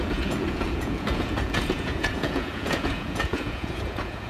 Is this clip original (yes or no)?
no